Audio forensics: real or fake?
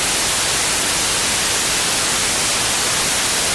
real